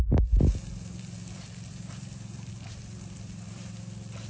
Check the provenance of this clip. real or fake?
fake